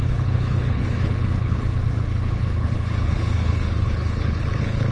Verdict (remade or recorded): remade